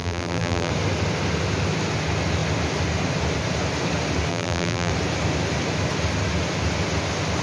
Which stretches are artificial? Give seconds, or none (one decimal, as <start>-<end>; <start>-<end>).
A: 0.0-0.7; 4.3-4.9